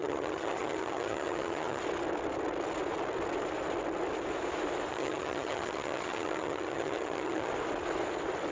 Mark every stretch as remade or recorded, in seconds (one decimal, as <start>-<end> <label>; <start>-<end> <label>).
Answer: 0.0-1.8 remade; 1.8-4.9 recorded; 4.9-7.5 remade; 7.5-8.5 recorded